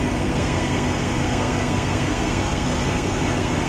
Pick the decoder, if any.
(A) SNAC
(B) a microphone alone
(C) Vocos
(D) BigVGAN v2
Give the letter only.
A